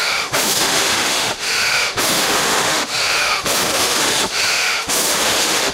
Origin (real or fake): fake